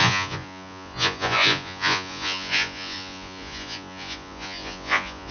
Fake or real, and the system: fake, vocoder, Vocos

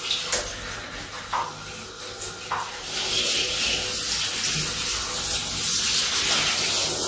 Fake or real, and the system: real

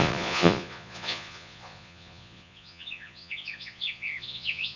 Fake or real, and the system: fake, vocoder, Vocos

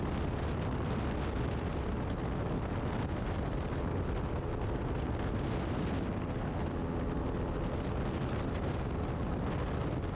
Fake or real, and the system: real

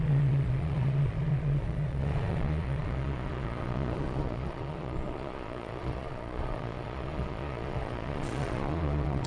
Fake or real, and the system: fake, vocoder, Vocos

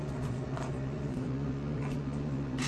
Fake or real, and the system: fake, vocoder, Vocos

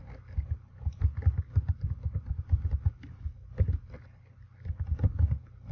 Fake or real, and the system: real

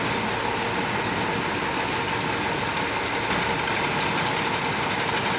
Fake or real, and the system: real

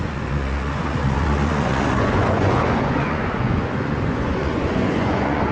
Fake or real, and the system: fake, vocoder, Vocos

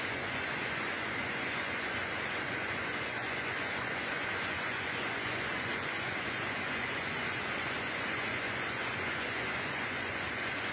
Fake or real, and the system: fake, vocoder, Vocos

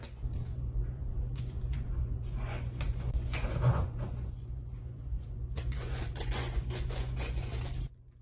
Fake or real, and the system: fake, vocoder, Vocos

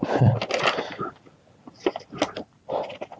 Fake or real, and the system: real